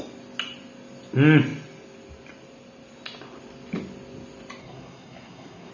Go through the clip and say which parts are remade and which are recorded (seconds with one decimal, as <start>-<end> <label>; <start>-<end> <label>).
0.0-4.6 recorded; 4.6-5.7 remade